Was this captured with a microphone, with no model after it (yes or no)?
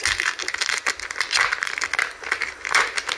yes